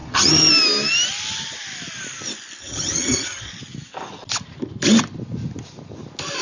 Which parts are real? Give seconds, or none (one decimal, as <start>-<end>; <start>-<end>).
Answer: 0.5-2.6; 3.5-6.4